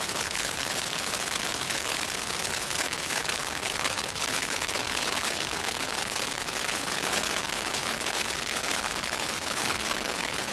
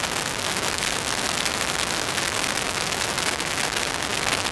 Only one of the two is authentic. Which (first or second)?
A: second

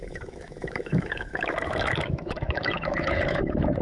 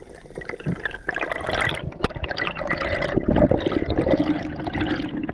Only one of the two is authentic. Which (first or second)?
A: second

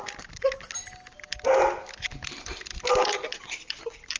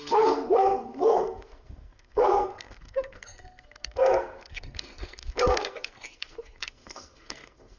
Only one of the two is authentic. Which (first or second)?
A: first